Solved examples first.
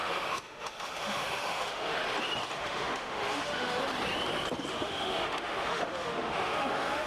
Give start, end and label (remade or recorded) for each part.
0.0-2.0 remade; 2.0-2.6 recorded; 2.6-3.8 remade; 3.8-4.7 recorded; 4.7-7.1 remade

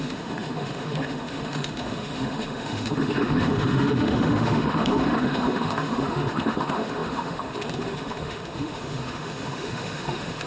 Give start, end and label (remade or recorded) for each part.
0.0-10.5 remade

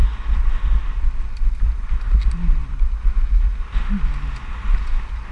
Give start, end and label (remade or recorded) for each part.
0.0-5.3 recorded

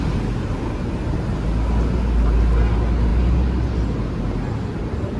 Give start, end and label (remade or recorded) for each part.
0.0-5.2 recorded

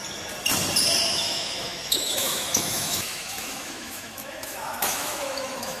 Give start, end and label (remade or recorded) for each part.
0.0-1.1 recorded; 1.1-5.8 remade